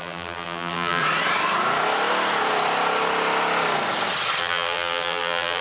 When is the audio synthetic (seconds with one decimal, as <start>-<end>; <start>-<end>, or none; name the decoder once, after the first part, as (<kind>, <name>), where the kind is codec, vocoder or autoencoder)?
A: 0.0-1.0 (vocoder, BigVGAN v2); 4.4-5.6